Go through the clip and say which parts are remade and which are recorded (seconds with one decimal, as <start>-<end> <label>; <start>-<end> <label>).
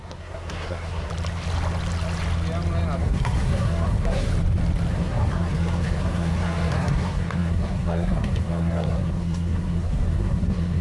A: 0.0-1.1 remade; 1.1-3.0 recorded; 3.0-4.3 remade; 4.3-4.9 recorded; 4.9-10.8 remade